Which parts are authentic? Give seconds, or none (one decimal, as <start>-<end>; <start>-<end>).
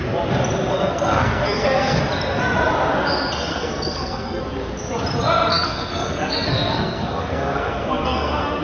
0.0-0.7; 2.0-3.5; 4.4-5.5